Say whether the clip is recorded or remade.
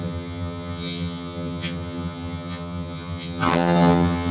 remade